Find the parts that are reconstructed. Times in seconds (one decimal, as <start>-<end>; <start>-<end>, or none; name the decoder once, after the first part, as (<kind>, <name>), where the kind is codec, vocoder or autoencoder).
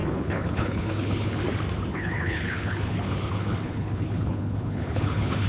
0.0-1.4 (codec, HILCodec); 1.9-5.5